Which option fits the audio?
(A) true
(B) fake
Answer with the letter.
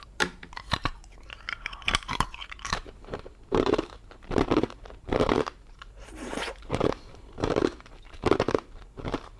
B